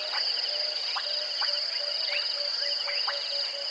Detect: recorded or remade recorded